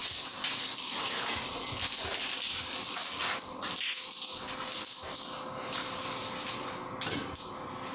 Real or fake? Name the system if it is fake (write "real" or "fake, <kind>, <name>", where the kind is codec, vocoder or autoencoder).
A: real